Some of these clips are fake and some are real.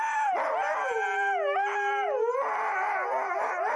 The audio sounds real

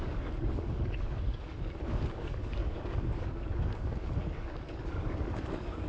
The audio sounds fake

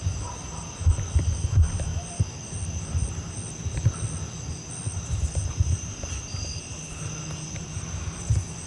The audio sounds real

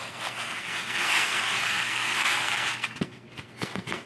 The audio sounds fake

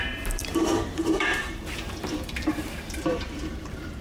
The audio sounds fake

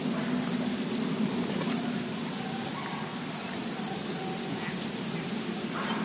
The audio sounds real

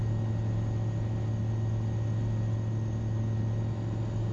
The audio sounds real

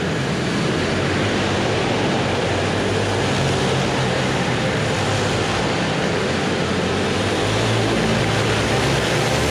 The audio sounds real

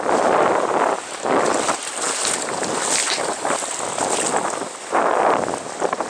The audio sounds real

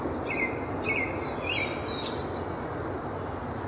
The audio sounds real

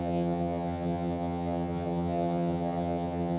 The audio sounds fake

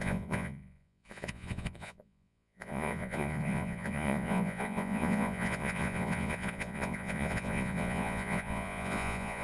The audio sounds fake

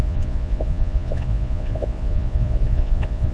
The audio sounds fake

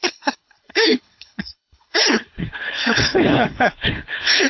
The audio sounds fake